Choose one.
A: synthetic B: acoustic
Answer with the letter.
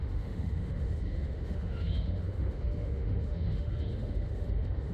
A